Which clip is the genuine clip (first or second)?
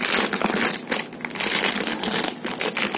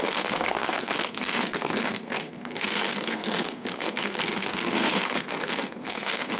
first